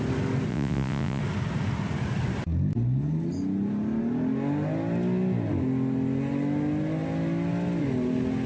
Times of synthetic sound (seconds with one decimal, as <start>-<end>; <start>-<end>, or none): 0.5-1.2